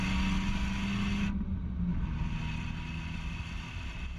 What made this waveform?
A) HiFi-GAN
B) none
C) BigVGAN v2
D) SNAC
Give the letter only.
B